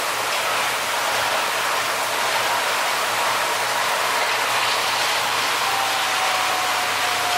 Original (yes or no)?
yes